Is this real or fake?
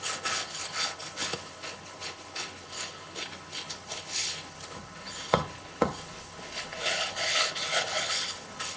fake